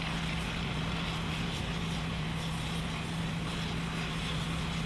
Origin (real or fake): real